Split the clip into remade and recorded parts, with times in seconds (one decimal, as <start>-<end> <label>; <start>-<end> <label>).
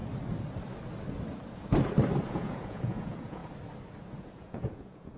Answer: 0.0-2.3 recorded; 2.3-3.4 remade; 3.4-4.0 recorded; 4.0-5.2 remade